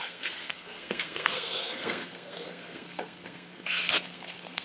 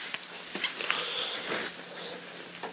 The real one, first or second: second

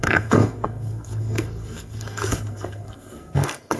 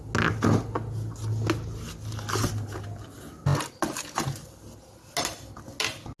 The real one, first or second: second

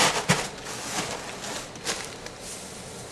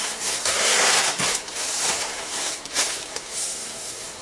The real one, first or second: first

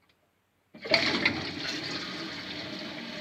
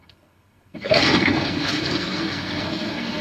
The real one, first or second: first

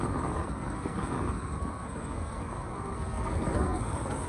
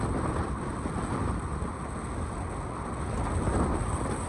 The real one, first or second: second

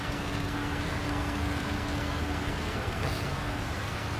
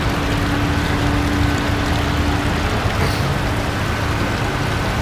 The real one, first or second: second